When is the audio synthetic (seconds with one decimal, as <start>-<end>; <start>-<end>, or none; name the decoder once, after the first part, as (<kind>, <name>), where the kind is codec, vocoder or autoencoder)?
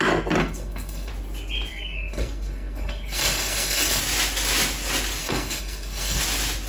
0.4-1.1 (codec, SNAC); 1.7-4.0; 5.2-6.2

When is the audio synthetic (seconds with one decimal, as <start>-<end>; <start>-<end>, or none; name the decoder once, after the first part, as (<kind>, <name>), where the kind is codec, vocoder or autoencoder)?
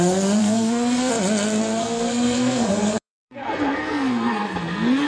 0.4-1.1 (codec, SNAC); 1.8-5.1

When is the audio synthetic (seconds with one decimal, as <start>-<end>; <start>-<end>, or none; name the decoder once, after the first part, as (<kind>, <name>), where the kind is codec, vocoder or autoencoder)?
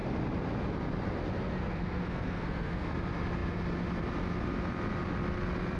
1.2-2.9 (codec, SNAC)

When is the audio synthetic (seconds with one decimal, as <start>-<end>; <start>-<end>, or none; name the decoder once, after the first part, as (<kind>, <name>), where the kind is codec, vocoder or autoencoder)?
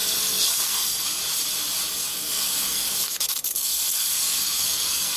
0.0-1.2 (codec, SNAC); 2.0-5.2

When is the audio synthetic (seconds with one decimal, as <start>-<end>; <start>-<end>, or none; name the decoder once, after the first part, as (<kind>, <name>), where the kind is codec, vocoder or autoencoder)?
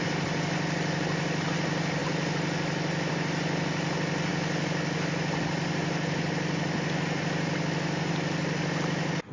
none